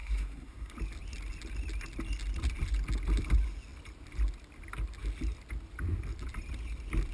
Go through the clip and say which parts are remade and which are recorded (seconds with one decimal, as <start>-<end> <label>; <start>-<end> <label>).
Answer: 0.0-0.7 remade; 0.7-7.1 recorded

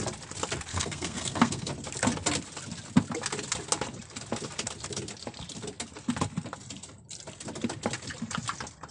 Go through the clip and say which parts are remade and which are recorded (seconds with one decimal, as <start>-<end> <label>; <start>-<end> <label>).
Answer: 0.0-0.7 recorded; 0.7-1.7 remade; 1.7-8.9 recorded

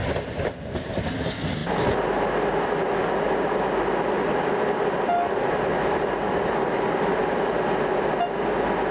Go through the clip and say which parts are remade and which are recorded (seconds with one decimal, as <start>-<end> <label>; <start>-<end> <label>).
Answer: 0.0-8.9 recorded

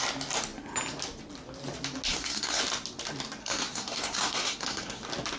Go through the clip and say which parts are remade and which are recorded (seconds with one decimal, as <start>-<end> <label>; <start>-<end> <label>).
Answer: 0.0-2.1 recorded; 2.1-2.6 remade; 2.6-3.4 recorded; 3.4-5.0 remade; 5.0-5.4 recorded

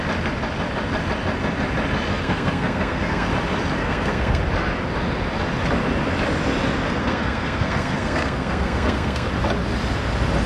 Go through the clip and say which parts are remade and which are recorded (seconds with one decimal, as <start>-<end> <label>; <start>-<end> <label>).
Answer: 0.0-2.1 recorded; 2.1-3.3 remade; 3.3-3.8 recorded; 3.8-4.4 remade; 4.4-7.0 recorded; 7.0-9.3 remade; 9.3-10.5 recorded

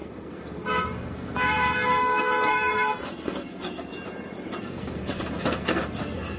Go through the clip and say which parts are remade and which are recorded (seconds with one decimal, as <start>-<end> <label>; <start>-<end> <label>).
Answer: 0.0-3.9 remade; 3.9-4.6 recorded; 4.6-6.4 remade

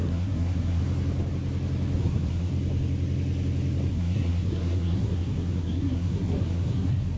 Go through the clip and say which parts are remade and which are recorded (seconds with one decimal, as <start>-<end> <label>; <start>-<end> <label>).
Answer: 0.0-0.8 remade; 0.8-2.0 recorded; 2.0-2.5 remade; 2.5-3.9 recorded; 3.9-7.2 remade